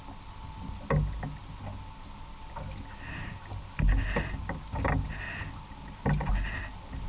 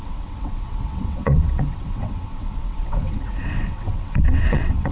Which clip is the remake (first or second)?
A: second